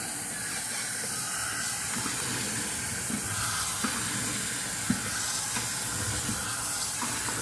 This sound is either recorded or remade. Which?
recorded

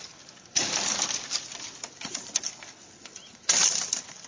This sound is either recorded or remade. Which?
recorded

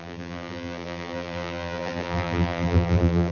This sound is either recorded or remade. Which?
remade